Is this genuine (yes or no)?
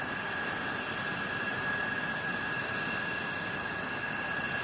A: yes